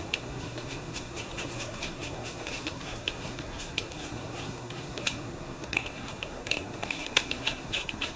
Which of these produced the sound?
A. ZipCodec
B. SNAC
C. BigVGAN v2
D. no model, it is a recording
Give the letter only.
B